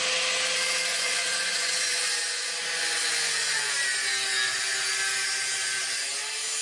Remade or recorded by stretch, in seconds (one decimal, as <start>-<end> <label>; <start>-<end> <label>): 0.0-0.9 recorded; 0.9-3.7 remade; 3.7-6.6 recorded